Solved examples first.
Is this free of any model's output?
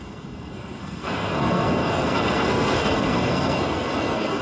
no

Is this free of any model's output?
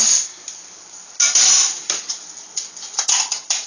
yes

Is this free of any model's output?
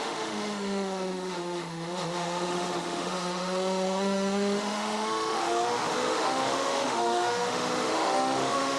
no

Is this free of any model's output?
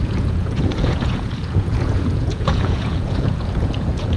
no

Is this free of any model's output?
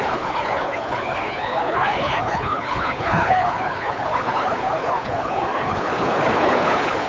no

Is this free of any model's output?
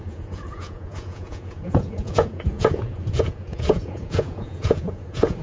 no